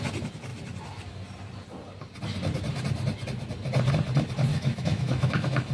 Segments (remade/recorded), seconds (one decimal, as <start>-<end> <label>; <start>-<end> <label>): 0.0-4.5 recorded; 4.5-5.7 remade